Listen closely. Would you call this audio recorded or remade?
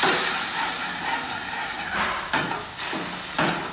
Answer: recorded